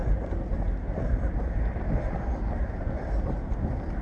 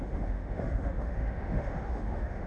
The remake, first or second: second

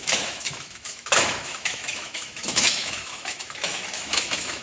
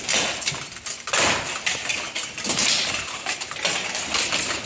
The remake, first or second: first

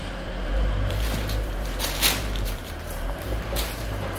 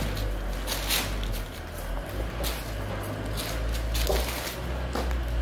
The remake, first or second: first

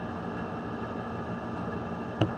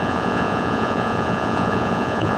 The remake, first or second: second